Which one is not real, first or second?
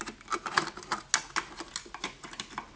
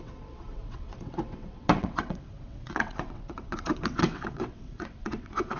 second